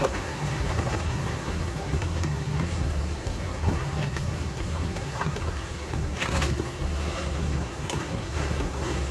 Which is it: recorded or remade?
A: remade